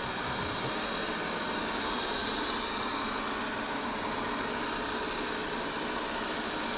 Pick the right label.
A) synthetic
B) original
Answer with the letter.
B